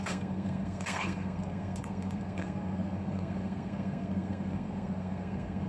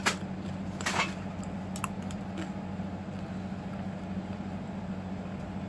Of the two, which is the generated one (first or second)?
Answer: first